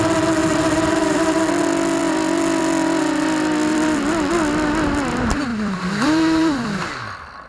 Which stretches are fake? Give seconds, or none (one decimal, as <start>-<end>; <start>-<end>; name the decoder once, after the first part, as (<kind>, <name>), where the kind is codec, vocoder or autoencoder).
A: 0.4-1.4 (vocoder, BigVGAN v2); 3.7-4.7; 5.5-6.8